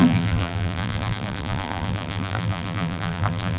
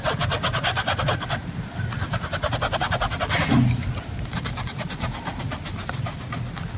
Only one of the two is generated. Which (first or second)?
first